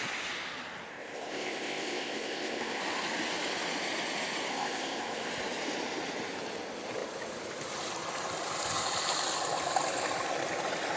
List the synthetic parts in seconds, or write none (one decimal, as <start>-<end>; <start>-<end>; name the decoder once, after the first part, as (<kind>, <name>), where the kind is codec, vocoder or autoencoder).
0.9-2.8 (codec, ZipCodec); 4.5-5.3